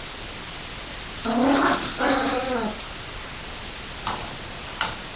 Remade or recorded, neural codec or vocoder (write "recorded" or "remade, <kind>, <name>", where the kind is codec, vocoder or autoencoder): recorded